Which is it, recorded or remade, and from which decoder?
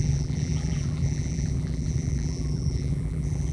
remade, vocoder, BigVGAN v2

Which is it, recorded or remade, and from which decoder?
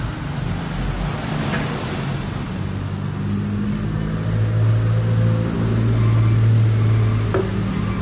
recorded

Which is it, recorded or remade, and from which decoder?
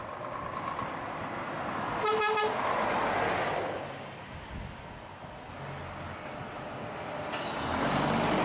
recorded